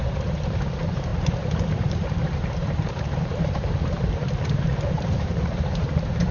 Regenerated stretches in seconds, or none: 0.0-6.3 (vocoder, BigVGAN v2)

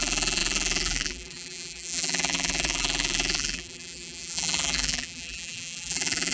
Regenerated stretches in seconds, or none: 0.0-6.3 (vocoder, BigVGAN v2)

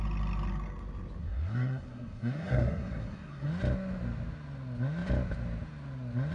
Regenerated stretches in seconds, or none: 1.2-3.5 (codec, SNAC)

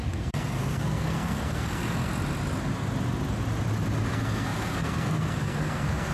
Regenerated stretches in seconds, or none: 0.0-2.1 (codec, SNAC); 4.1-6.1

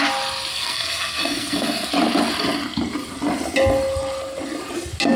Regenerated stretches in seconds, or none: 0.5-1.9 (codec, SNAC)

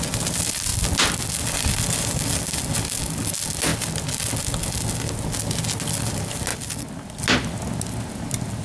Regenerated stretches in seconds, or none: none

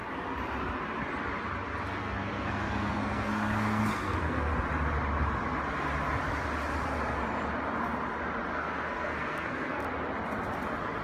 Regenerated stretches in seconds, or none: 2.0-4.5 (codec, SNAC); 8.5-9.8

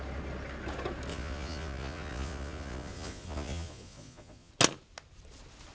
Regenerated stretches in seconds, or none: 1.1-4.5 (vocoder, Vocos)